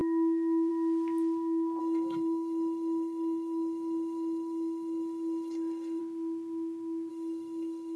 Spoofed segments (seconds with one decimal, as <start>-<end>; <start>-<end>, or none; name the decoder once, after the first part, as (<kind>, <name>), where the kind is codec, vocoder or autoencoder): 1.8-6.0 (codec, SNAC); 7.1-8.0